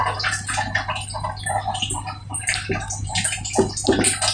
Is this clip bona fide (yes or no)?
yes